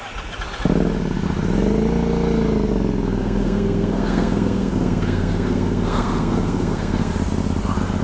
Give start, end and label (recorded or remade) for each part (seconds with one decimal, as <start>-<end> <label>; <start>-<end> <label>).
0.0-3.2 recorded; 3.2-7.1 remade; 7.1-8.0 recorded